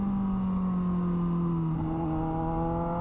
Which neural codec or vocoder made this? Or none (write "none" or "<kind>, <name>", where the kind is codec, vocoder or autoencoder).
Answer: none